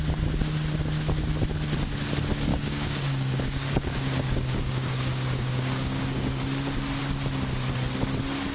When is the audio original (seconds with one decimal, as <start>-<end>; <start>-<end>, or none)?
0.0-2.5; 6.4-8.5